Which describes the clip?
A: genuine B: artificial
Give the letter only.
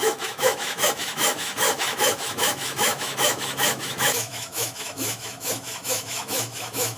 B